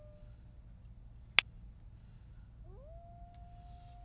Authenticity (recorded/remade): recorded